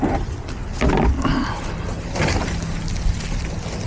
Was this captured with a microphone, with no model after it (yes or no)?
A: yes